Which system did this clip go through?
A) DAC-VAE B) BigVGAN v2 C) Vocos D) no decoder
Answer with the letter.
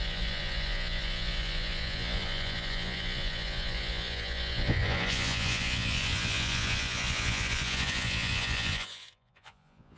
C